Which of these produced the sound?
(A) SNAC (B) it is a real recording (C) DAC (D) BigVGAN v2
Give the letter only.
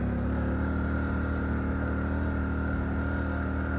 B